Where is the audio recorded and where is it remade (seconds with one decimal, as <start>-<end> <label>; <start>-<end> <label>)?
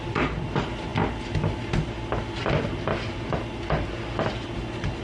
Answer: 0.0-5.0 recorded